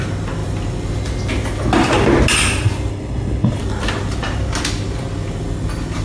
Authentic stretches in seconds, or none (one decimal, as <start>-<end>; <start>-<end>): 0.0-2.9; 3.6-6.0